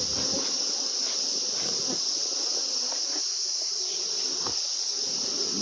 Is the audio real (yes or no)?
no